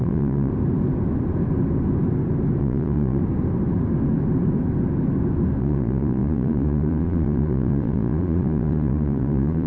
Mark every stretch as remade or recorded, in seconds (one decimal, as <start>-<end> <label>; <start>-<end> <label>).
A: 0.0-0.5 remade; 0.5-2.6 recorded; 2.6-3.2 remade; 3.2-5.6 recorded; 5.6-9.7 remade